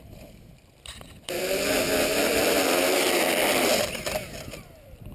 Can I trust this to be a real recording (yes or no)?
no